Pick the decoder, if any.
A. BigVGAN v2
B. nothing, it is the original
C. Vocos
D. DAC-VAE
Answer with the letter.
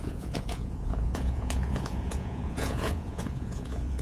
C